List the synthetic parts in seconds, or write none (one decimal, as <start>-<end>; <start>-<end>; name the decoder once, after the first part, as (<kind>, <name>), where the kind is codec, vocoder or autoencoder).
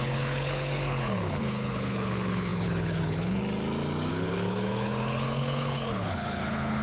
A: 0.0-3.4 (codec, HILCodec); 4.1-6.8